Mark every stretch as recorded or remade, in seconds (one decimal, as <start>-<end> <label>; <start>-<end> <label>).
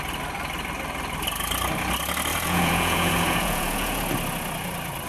0.0-2.3 recorded; 2.3-4.0 remade; 4.0-5.1 recorded